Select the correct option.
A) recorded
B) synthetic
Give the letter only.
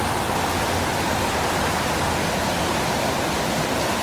A